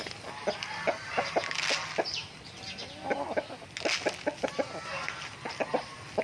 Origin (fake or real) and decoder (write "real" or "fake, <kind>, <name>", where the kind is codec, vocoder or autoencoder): real